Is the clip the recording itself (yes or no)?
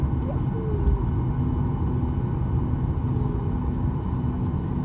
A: yes